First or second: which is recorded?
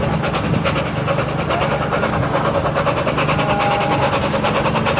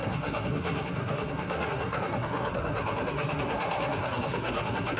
first